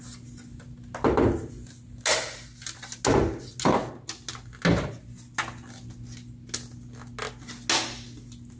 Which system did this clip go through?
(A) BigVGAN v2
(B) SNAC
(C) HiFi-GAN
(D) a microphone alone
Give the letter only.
D